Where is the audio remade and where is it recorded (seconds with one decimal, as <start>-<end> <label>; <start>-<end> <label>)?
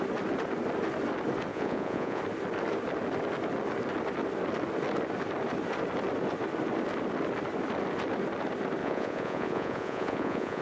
0.0-1.5 recorded; 1.5-2.2 remade; 2.2-8.8 recorded; 8.8-10.6 remade